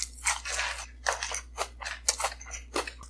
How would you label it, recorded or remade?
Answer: recorded